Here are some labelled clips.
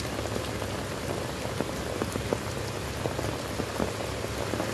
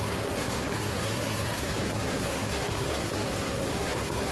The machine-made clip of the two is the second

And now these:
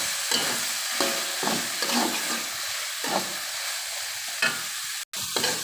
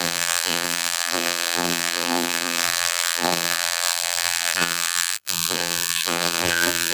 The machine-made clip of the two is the second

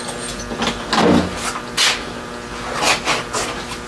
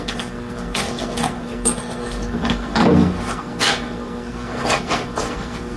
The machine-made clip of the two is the second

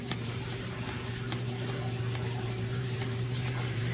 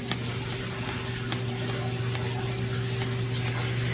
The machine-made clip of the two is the first